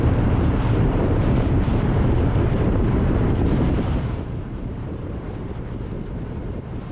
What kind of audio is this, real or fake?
fake